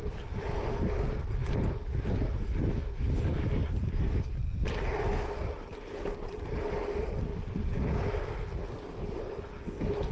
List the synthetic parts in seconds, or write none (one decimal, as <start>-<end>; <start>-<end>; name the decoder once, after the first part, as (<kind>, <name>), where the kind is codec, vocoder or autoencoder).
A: 3.6-4.7 (vocoder, BigVGAN v2)